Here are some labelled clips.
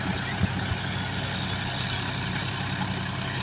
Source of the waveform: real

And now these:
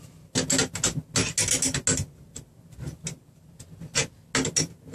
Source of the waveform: real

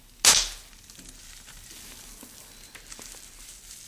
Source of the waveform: real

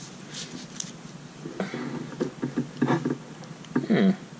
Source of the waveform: real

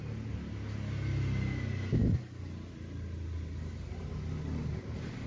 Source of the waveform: real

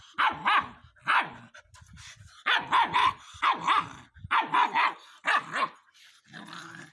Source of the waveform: real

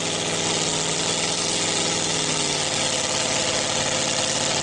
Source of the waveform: real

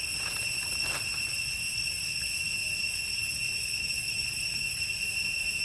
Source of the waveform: real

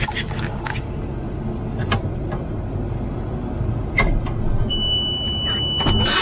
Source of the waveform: real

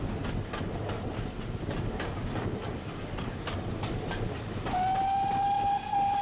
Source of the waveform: real